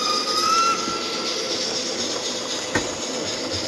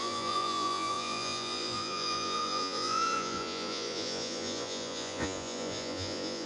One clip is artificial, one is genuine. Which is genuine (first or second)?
first